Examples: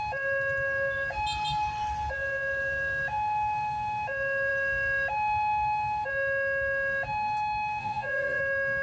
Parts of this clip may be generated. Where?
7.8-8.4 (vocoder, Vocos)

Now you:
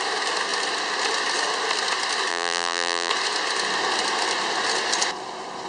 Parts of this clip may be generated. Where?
2.3-3.1 (vocoder, BigVGAN v2)

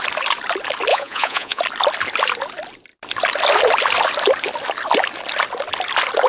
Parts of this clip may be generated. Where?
0.9-1.6 (vocoder, Vocos)

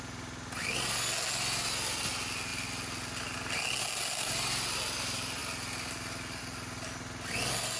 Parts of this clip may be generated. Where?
none

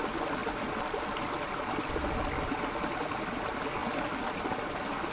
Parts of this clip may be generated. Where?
none